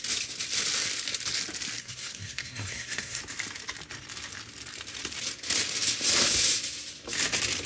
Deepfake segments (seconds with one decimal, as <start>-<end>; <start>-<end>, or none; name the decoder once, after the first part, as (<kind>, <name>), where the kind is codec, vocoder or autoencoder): 1.8-3.2 (codec, SNAC)